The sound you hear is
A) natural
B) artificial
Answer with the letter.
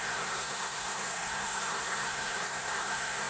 B